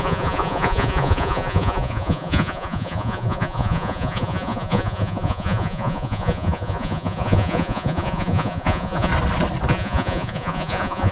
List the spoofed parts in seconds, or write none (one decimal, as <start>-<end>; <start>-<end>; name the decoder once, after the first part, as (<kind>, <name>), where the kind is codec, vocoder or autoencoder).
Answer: 0.0-9.1 (vocoder, Vocos); 9.7-11.1